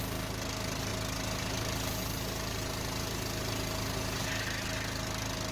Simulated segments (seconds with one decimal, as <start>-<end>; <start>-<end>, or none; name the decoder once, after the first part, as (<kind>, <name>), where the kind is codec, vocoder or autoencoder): none